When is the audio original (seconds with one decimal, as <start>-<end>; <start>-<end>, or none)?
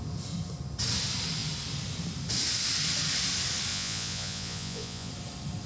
0.0-3.7; 5.1-5.7